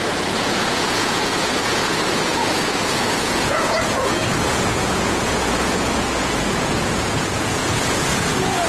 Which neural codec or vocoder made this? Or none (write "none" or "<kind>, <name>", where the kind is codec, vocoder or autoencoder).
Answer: vocoder, Vocos